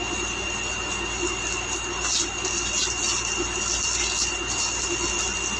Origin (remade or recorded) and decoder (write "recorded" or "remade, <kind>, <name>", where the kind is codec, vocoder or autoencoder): recorded